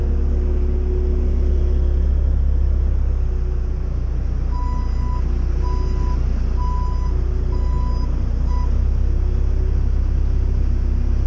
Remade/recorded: recorded